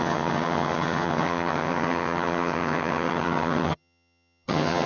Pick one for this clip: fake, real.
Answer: fake